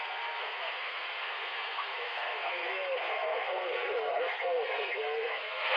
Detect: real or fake fake